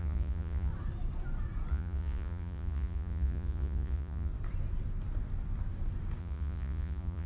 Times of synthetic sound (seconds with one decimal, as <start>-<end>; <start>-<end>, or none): 0.0-0.7; 1.7-4.3; 6.2-7.3